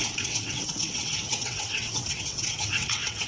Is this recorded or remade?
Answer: remade